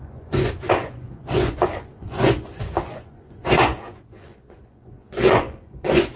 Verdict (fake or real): fake